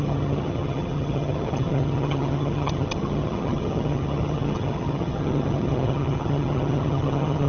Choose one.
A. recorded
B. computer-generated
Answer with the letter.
B